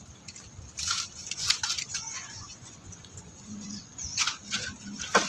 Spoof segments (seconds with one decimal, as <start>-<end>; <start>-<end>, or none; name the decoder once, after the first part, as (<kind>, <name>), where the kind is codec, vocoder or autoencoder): 1.2-4.4 (vocoder, Vocos)